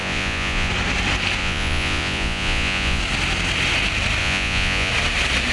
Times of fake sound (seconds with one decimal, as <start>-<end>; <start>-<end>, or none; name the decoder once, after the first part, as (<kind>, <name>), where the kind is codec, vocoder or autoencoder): 0.0-0.7 (vocoder, Vocos); 1.4-3.0; 4.2-4.9